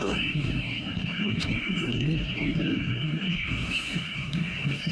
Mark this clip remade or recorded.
remade